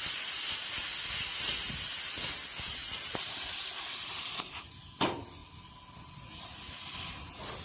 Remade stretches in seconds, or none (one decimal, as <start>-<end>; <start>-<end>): none